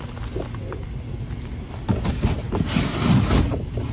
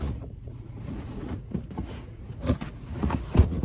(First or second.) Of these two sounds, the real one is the first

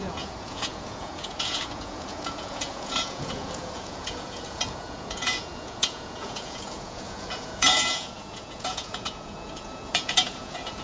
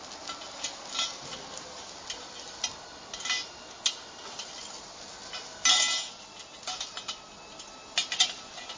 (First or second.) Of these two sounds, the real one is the second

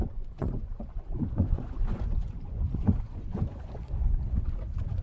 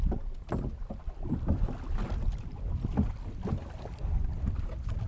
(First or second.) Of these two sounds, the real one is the second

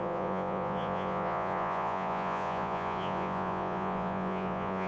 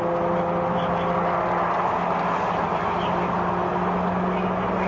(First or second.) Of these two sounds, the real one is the second